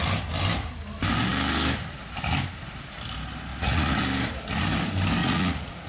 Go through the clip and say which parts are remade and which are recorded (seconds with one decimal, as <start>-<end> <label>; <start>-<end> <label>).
0.0-3.5 recorded; 3.5-4.0 remade; 4.0-5.2 recorded; 5.2-5.9 remade

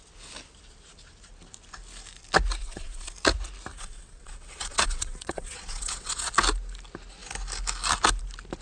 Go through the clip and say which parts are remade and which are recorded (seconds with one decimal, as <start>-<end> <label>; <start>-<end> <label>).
0.0-2.6 recorded; 2.6-3.1 remade; 3.1-3.7 recorded; 3.7-6.3 remade; 6.3-8.6 recorded

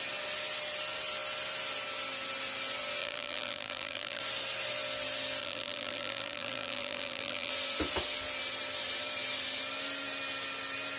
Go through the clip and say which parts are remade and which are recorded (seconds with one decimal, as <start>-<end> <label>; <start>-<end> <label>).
0.0-3.0 recorded; 3.0-4.2 remade; 4.2-5.4 recorded; 5.4-7.5 remade; 7.5-11.0 recorded

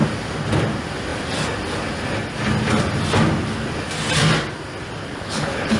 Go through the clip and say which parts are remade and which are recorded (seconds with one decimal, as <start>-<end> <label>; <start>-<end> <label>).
0.0-5.0 recorded; 5.0-5.8 remade